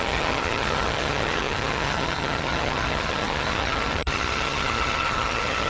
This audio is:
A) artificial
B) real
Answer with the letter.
A